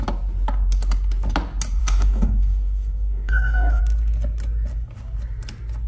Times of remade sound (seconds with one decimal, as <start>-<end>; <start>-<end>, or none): 1.8-3.8